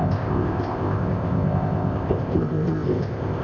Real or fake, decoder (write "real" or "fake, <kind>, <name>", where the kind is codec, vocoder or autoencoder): fake, codec, ZipCodec